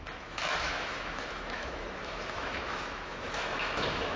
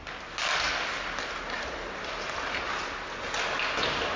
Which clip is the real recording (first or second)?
second